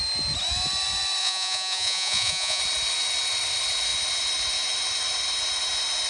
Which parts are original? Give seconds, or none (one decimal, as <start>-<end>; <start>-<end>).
0.0-1.2; 2.6-6.1